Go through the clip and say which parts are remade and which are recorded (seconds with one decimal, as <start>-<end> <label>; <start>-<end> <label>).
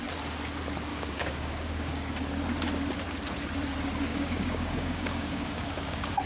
0.0-0.9 recorded; 0.9-2.2 remade; 2.2-4.1 recorded; 4.1-6.3 remade